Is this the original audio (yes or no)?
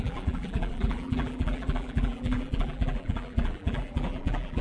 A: no